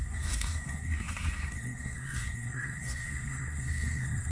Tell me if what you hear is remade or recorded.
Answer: remade